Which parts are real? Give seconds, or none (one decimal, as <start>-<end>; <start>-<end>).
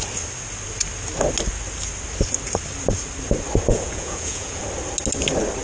0.0-3.7; 4.6-5.6